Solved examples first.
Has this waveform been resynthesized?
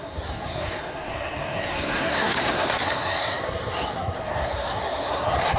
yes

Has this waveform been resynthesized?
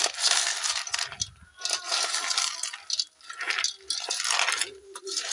no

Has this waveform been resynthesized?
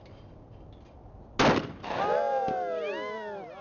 no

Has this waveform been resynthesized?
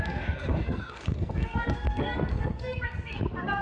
yes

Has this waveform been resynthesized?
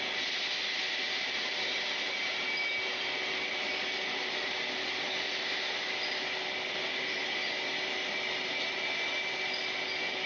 no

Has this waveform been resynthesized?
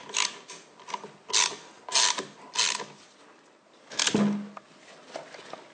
no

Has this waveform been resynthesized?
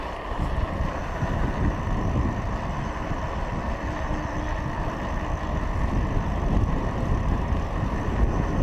no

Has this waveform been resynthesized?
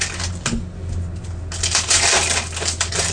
no